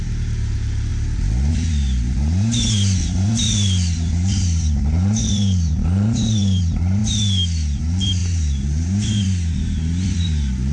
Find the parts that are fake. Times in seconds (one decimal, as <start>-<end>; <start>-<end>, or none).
0.0-0.9; 1.5-7.0; 7.8-10.7